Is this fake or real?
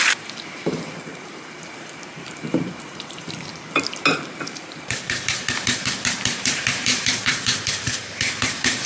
fake